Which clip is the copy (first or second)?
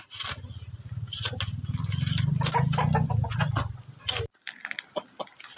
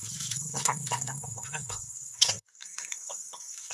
second